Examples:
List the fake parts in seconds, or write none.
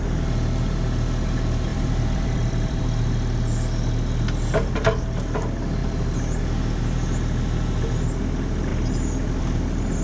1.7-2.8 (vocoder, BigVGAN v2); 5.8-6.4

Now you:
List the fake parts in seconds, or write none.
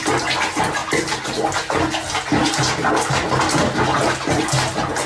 none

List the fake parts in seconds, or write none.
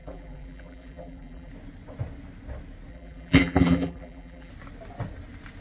0.0-1.5 (vocoder, BigVGAN v2); 2.9-4.5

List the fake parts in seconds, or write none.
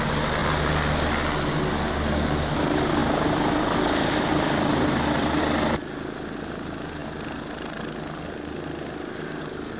0.4-1.5 (vocoder, BigVGAN v2); 3.0-5.4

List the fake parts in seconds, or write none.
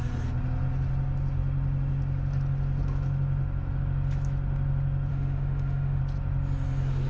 5.1-6.0 (autoencoder, DAC-VAE)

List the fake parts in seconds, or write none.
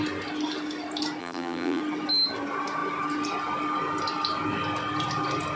1.2-1.8 (vocoder, BigVGAN v2)